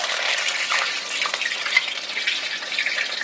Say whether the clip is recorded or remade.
recorded